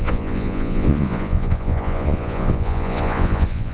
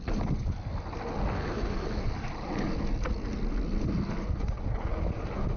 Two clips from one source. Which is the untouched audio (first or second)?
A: second